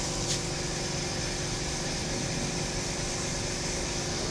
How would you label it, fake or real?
real